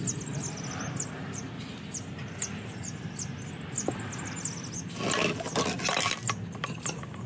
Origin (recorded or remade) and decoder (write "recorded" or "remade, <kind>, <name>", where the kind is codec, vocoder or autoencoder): recorded